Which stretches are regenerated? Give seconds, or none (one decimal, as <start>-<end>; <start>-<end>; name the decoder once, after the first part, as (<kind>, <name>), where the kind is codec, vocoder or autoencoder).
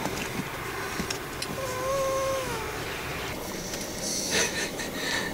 1.9-2.6 (autoencoder, DAC-VAE); 4.1-4.8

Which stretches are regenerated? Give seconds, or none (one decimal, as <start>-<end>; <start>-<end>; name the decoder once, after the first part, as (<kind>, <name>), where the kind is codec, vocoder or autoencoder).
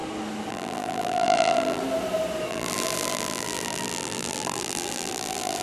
0.5-1.8 (vocoder, BigVGAN v2); 2.5-5.6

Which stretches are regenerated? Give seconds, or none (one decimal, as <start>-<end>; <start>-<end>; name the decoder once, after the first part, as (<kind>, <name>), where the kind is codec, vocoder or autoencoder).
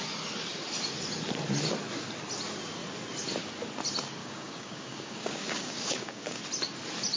4.2-6.4 (codec, DAC)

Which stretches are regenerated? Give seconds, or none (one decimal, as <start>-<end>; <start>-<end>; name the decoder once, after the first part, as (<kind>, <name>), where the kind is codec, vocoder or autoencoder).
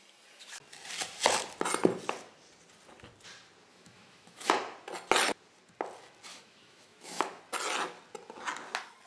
3.7-4.5 (autoencoder, DAC-VAE); 6.3-7.4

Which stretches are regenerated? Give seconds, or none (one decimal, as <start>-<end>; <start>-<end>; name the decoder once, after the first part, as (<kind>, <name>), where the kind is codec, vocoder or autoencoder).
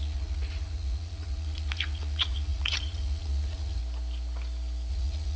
0.0-3.8 (vocoder, Vocos); 4.9-5.4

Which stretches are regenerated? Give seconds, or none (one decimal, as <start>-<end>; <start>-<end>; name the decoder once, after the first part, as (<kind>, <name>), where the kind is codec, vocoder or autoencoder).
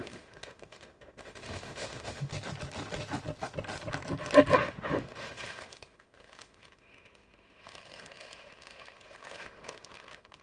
0.0-2.3 (autoencoder, DAC-VAE); 4.6-10.4